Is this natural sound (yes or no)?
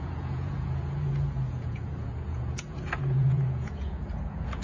no